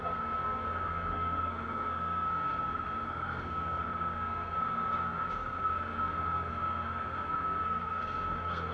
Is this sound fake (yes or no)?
yes